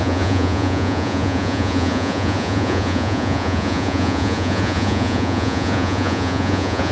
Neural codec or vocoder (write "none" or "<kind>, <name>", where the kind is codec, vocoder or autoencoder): vocoder, Vocos